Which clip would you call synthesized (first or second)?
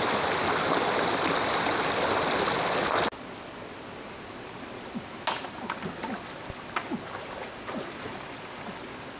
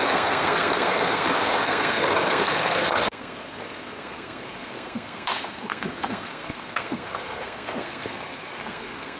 second